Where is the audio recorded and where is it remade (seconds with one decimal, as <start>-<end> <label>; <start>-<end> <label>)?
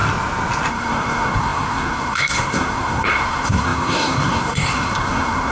0.0-0.7 recorded; 0.7-5.5 remade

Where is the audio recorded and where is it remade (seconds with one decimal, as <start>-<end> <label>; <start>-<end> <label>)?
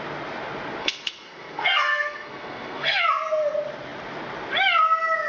0.0-0.8 recorded; 0.8-3.0 remade; 3.0-5.3 recorded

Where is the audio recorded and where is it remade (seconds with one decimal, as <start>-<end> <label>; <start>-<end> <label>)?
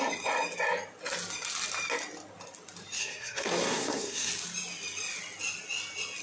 0.0-3.0 recorded; 3.0-4.3 remade; 4.3-6.2 recorded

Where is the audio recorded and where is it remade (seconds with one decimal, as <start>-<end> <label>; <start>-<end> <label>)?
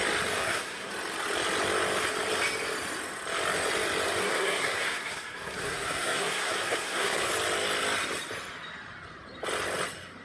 0.0-0.4 recorded; 0.4-0.9 remade; 0.9-4.2 recorded; 4.2-7.3 remade; 7.3-10.2 recorded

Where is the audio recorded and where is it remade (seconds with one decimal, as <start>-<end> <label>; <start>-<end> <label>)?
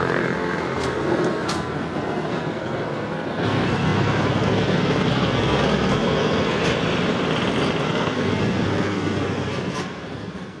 0.0-6.6 remade; 6.6-7.8 recorded; 7.8-10.6 remade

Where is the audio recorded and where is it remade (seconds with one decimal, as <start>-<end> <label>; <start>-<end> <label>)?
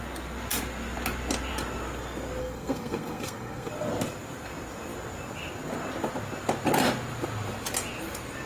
0.0-2.4 recorded; 2.4-3.7 remade; 3.7-8.5 recorded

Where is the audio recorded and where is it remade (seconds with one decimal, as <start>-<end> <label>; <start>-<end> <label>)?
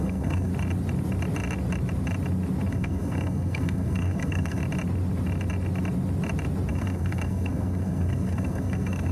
0.0-0.5 remade; 0.5-2.7 recorded; 2.7-4.6 remade; 4.6-6.7 recorded; 6.7-9.1 remade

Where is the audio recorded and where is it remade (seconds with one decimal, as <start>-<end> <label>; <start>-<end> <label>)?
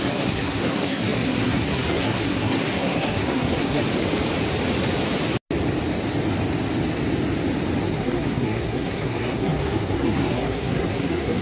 0.0-3.8 remade; 3.8-7.8 recorded; 7.8-11.4 remade